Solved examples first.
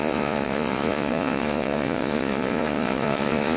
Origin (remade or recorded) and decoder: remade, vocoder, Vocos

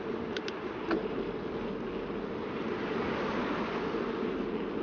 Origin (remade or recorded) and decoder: recorded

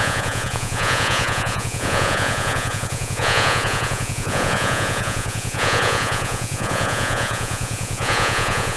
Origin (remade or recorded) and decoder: remade, vocoder, Vocos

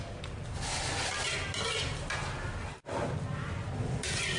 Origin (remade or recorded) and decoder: recorded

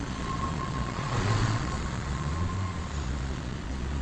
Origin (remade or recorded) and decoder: remade, vocoder, Vocos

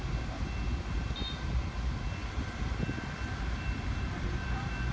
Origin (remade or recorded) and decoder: recorded